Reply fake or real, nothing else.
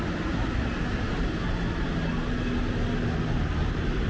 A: real